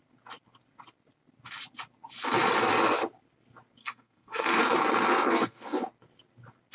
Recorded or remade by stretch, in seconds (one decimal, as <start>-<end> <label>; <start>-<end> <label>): 0.0-3.8 recorded; 3.8-4.6 remade; 4.6-5.1 recorded; 5.1-5.8 remade; 5.8-6.7 recorded